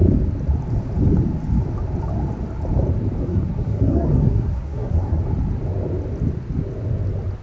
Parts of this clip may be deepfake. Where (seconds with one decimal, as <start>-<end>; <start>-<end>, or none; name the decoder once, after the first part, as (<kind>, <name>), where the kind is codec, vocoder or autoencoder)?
3.2-5.2 (codec, SNAC)